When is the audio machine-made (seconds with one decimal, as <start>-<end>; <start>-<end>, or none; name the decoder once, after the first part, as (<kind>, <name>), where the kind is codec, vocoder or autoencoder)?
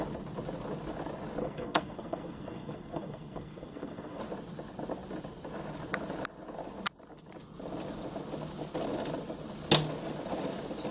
1.4-4.2 (codec, SNAC)